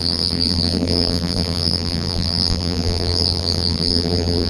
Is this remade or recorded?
remade